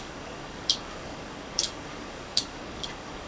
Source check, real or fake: fake